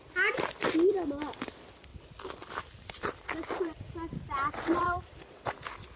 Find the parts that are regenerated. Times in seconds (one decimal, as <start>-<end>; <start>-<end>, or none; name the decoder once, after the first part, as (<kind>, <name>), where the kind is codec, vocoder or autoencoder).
1.9-5.5 (vocoder, BigVGAN v2)